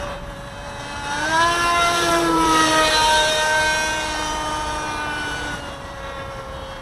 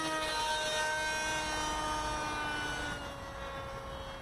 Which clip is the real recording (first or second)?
second